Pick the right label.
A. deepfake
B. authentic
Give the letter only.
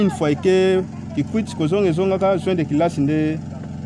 B